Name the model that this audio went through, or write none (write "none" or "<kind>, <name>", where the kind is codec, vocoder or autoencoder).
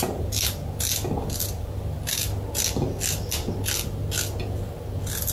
none